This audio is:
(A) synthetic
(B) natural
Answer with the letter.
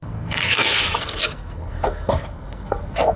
A